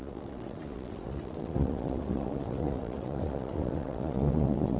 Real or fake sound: fake